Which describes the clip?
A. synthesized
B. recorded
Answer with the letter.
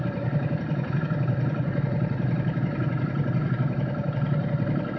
B